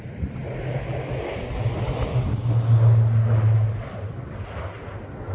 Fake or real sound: real